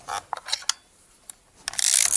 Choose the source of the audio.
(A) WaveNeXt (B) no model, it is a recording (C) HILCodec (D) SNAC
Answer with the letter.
B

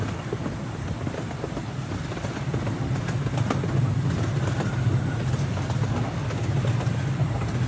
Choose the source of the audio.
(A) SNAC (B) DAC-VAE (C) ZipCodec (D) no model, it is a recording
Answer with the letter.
D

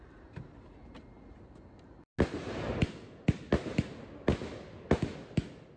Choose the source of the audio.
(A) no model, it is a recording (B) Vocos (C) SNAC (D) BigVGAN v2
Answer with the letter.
A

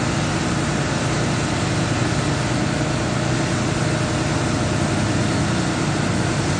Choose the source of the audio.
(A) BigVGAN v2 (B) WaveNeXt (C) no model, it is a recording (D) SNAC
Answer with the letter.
C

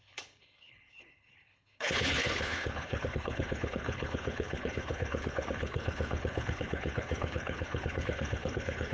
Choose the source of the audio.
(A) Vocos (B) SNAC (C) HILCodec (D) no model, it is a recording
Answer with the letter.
C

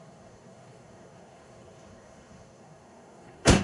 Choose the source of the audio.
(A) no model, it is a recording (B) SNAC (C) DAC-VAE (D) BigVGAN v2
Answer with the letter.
B